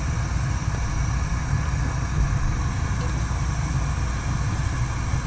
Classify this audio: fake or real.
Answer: real